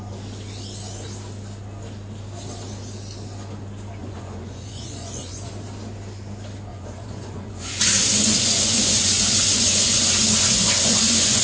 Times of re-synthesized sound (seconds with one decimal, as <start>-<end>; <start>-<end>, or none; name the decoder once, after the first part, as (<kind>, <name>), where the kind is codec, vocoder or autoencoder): 4.0-5.5 (vocoder, Vocos); 6.7-11.4